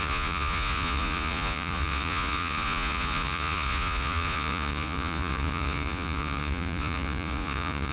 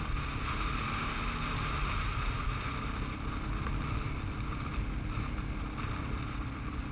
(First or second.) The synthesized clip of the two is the first